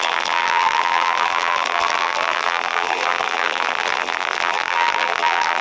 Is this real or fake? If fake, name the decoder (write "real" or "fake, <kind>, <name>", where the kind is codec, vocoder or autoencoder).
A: fake, vocoder, BigVGAN v2